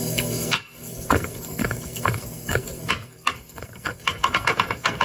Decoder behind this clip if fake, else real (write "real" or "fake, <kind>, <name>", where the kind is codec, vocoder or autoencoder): fake, codec, SNAC